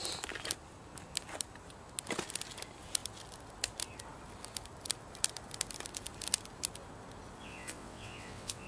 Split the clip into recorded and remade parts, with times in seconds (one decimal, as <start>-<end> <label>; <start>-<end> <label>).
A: 0.0-7.4 recorded; 7.4-8.7 remade